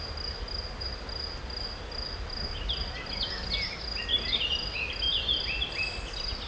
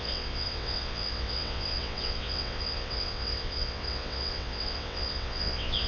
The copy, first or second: second